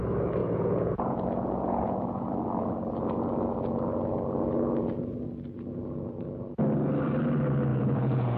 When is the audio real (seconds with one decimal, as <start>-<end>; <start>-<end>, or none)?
0.0-0.4; 2.3-7.7